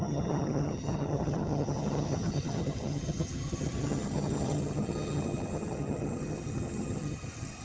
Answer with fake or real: fake